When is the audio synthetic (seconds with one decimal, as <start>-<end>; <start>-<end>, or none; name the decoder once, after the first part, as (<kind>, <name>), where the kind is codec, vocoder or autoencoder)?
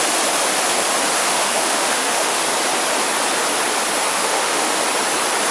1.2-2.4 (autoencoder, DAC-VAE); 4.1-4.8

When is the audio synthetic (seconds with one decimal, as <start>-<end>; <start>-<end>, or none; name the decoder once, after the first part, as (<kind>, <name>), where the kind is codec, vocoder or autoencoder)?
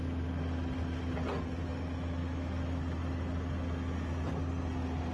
2.2-2.8 (autoencoder, DAC-VAE)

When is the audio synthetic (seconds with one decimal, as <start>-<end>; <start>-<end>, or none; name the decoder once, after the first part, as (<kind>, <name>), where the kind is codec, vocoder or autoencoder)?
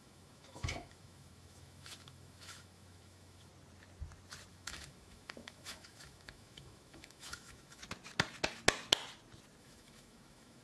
0.0-3.5 (autoencoder, DAC-VAE); 4.5-7.8; 9.6-10.6